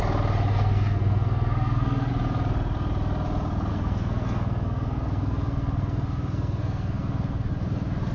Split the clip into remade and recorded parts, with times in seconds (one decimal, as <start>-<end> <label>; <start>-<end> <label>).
0.0-0.5 recorded; 0.5-2.1 remade; 2.1-3.7 recorded; 3.7-7.5 remade; 7.5-8.1 recorded